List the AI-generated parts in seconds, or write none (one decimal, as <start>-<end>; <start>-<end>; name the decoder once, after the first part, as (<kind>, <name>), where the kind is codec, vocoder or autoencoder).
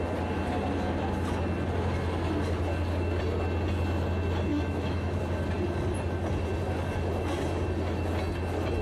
4.5-5.2 (autoencoder, DAC-VAE)